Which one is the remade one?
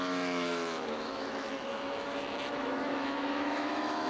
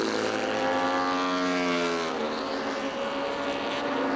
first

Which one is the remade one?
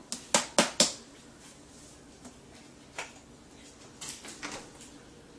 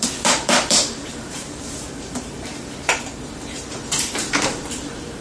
second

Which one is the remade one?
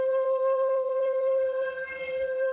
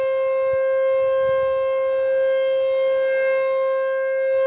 first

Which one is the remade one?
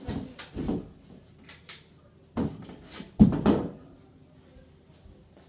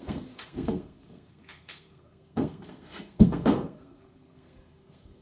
second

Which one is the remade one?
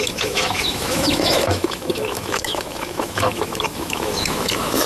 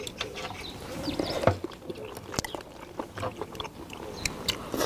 first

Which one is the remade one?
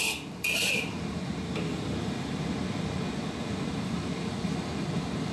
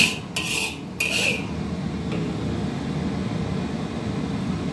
first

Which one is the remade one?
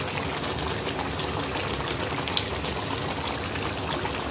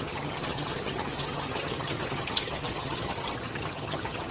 second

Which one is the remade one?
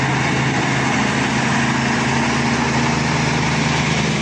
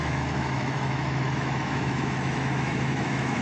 second